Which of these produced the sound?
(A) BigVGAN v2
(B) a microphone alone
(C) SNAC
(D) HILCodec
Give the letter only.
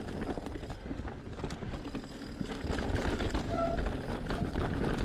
B